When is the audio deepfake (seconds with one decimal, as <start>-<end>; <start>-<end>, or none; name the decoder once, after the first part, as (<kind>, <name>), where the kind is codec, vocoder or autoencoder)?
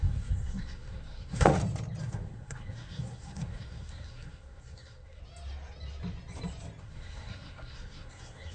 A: 0.0-1.5 (codec, SNAC); 2.0-5.2; 6.8-8.5